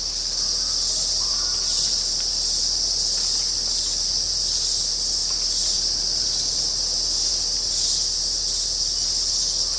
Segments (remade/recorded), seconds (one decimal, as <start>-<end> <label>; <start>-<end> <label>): 0.0-9.8 recorded